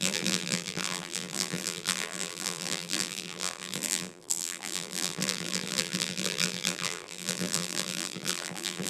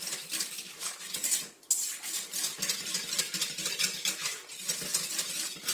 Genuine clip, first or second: second